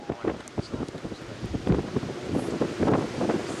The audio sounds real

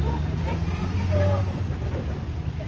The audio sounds real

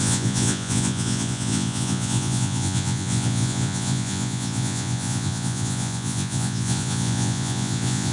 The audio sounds fake